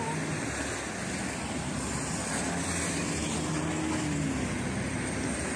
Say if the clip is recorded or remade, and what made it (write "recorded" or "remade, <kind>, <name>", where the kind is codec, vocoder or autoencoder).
recorded